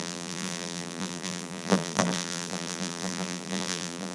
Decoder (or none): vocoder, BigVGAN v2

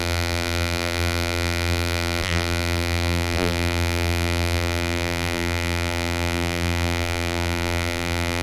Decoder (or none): vocoder, BigVGAN v2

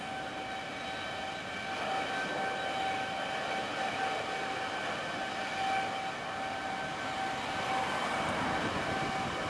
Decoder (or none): none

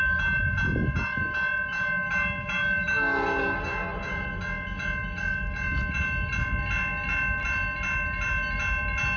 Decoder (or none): none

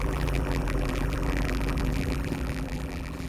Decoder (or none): vocoder, BigVGAN v2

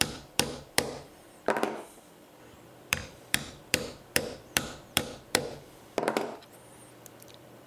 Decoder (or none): vocoder, BigVGAN v2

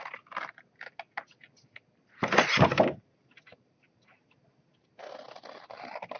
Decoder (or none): none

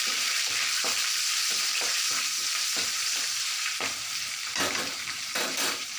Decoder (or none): vocoder, BigVGAN v2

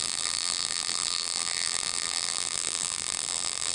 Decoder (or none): vocoder, BigVGAN v2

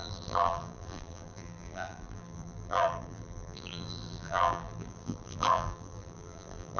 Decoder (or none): vocoder, BigVGAN v2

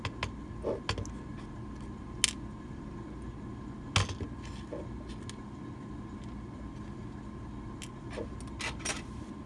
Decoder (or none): none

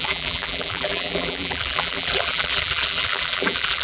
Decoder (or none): vocoder, BigVGAN v2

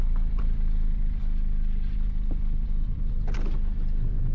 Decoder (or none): vocoder, BigVGAN v2